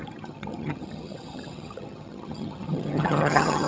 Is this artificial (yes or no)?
yes